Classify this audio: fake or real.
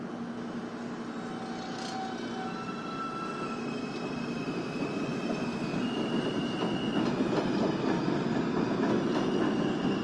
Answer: real